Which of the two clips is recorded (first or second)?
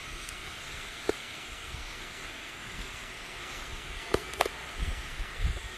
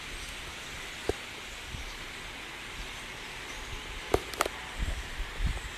second